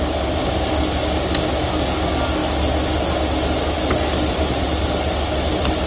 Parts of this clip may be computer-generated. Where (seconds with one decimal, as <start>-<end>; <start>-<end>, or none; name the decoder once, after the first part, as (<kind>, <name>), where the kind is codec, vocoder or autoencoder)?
none